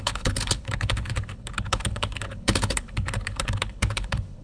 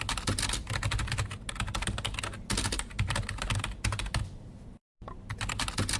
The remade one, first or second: first